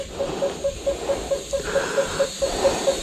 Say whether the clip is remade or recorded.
recorded